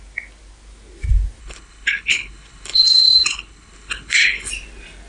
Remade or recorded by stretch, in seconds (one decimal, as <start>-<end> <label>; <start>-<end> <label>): 0.0-1.4 recorded; 1.4-4.5 remade; 4.5-5.1 recorded